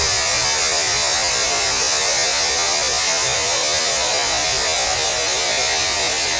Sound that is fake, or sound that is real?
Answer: real